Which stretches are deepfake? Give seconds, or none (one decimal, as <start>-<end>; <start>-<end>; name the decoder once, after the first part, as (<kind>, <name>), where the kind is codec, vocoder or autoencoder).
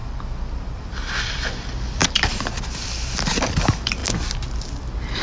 0.8-4.0 (vocoder, BigVGAN v2)